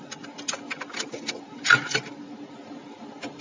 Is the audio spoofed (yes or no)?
no